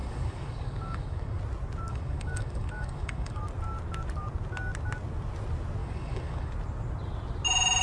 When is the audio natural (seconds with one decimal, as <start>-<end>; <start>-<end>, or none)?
1.4-1.9; 3.4-5.8; 6.5-7.8

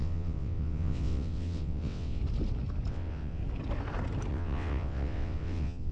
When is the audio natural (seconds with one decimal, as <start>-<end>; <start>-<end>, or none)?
2.2-2.9; 3.4-4.3

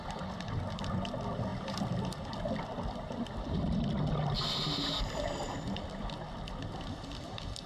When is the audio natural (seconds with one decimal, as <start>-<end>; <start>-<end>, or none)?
0.0-7.7

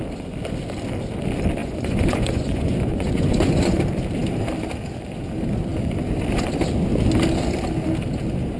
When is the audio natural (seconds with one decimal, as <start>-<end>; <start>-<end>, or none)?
0.0-1.6; 3.8-8.6

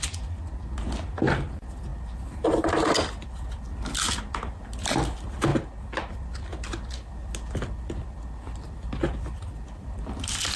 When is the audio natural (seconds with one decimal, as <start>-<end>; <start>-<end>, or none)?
0.0-10.6

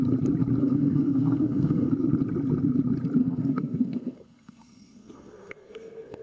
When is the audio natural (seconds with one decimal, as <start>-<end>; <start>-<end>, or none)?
0.0-0.6; 1.9-3.2

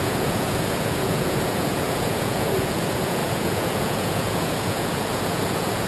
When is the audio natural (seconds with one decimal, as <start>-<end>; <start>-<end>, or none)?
none

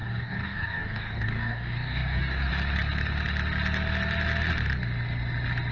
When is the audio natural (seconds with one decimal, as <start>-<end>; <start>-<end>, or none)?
2.5-5.7